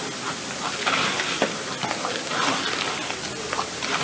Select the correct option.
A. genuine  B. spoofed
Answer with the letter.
A